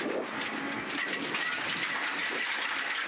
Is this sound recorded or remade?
remade